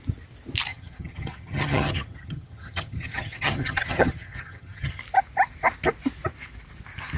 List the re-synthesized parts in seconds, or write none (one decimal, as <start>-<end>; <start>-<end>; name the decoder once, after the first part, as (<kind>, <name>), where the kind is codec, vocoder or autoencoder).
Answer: 0.7-5.0 (vocoder, HiFi-GAN)